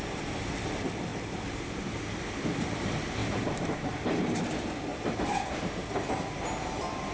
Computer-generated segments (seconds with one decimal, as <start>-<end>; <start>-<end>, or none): 1.1-1.9; 3.2-4.4; 4.9-5.6